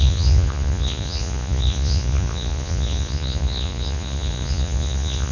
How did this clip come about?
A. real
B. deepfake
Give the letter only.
B